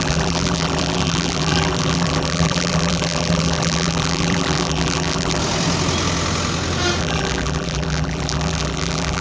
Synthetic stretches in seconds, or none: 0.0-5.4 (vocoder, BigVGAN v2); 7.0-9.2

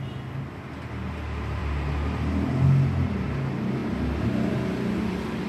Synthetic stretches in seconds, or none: none

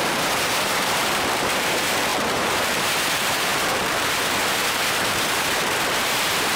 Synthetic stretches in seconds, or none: 0.0-6.6 (vocoder, BigVGAN v2)